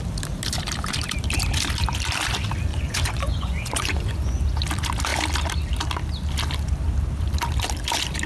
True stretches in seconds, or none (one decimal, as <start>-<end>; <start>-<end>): 0.0-2.7; 4.4-8.3